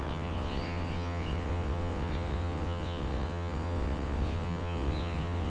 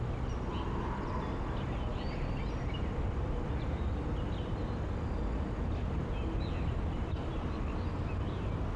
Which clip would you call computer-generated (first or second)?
first